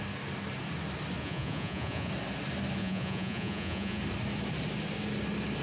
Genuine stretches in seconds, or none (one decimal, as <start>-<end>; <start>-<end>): 0.0-1.2; 2.1-2.8; 4.0-5.6